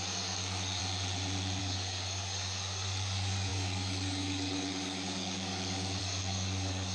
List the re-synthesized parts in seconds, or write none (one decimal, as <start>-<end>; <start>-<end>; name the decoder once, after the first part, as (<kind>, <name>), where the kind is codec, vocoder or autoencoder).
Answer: 0.0-0.8 (codec, DAC); 1.6-6.9